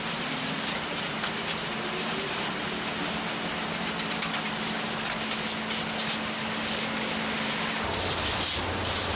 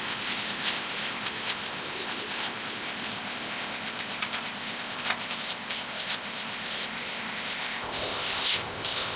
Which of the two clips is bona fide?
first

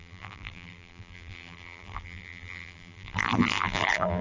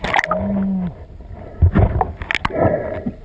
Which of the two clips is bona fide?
second